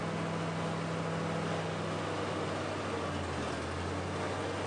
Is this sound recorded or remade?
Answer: recorded